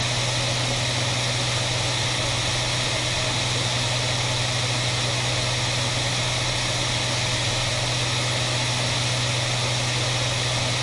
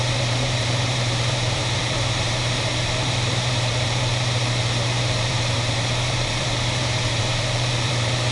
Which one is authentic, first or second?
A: first